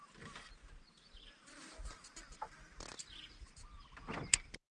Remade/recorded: recorded